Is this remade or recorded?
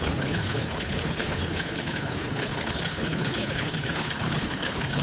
remade